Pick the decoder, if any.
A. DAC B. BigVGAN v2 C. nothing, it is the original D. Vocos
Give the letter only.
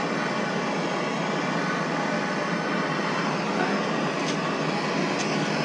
C